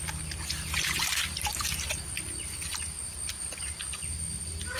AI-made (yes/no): no